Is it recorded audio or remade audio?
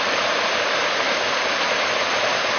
recorded